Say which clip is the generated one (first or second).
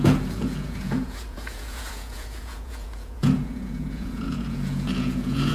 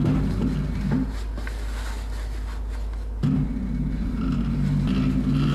first